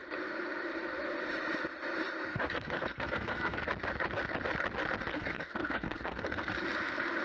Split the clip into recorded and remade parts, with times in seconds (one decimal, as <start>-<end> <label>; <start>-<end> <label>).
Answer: 0.0-2.3 recorded; 2.3-3.6 remade; 3.6-5.1 recorded; 5.1-6.5 remade; 6.5-7.2 recorded